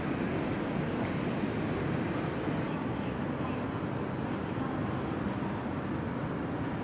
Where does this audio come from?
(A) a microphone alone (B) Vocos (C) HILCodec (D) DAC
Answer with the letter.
A